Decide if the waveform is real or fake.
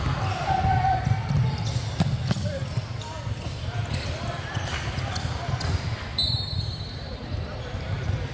real